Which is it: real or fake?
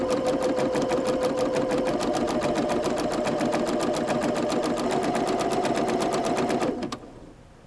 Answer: real